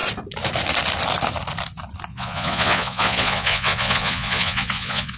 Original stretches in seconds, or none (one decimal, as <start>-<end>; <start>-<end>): 0.0-2.1